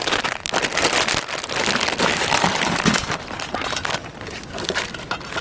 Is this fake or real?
real